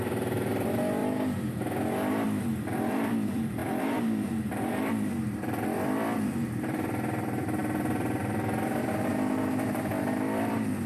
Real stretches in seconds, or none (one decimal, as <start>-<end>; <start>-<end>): none